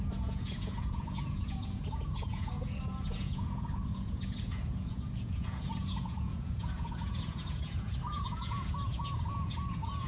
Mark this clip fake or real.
fake